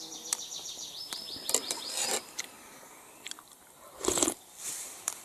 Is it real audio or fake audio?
fake